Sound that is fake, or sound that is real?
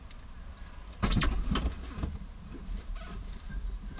real